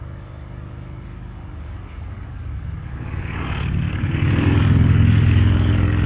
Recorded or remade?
remade